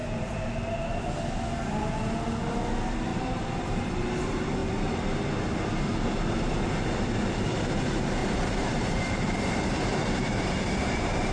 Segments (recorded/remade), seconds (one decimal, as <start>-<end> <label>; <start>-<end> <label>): 0.0-0.5 remade; 0.5-3.1 recorded; 3.1-3.8 remade; 3.8-8.2 recorded; 8.2-11.3 remade